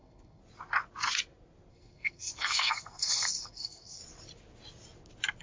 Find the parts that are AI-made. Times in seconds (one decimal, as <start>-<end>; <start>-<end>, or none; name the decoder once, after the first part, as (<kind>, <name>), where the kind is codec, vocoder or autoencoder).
0.0-0.4 (codec, SNAC); 1.7-4.0

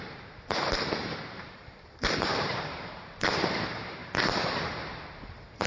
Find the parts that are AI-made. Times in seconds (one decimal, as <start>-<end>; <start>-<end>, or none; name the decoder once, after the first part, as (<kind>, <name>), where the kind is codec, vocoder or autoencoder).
0.0-5.7 (vocoder, BigVGAN v2)